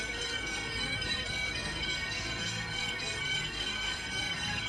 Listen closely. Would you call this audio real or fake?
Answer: fake